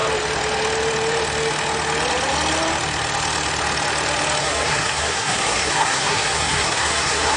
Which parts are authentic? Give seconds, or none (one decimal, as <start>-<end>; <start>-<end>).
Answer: 0.0-4.4